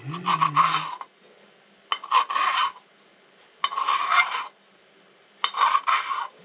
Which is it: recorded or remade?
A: recorded